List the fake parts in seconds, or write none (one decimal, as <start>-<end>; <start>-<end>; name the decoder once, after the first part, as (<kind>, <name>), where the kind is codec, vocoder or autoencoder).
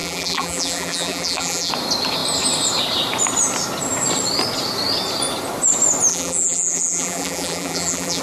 0.0-1.7 (vocoder, BigVGAN v2); 6.1-8.2